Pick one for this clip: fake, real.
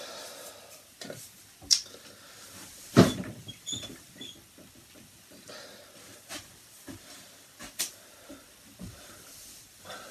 fake